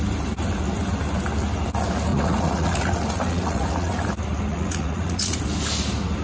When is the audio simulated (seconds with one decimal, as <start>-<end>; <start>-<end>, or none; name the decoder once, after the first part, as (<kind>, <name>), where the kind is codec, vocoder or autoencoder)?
2.1-4.0 (vocoder, Vocos); 4.5-5.4